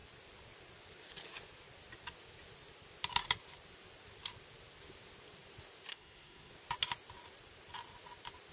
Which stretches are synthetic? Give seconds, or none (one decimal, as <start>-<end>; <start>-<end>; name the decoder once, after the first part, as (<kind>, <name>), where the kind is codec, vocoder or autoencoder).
5.9-6.5 (codec, SNAC)